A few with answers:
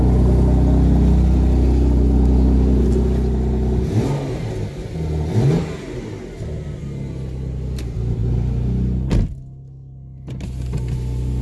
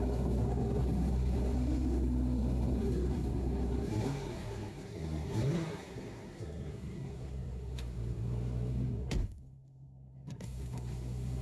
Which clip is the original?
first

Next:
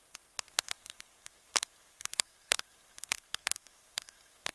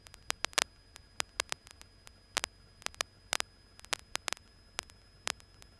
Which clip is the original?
second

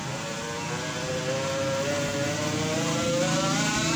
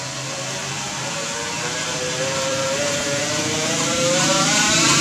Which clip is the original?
first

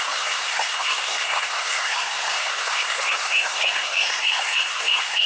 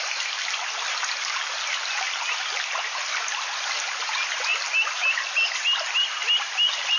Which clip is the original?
second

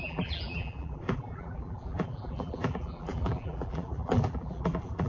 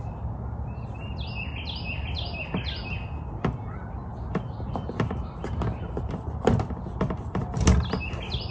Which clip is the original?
second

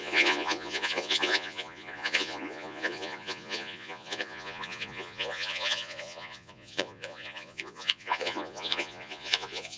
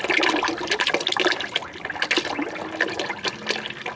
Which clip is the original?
second